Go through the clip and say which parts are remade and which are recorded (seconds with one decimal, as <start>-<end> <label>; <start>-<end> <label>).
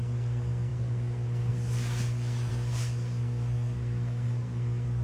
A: 0.0-5.0 remade